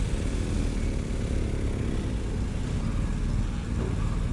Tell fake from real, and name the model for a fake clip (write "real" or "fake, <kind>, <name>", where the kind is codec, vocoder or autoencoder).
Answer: real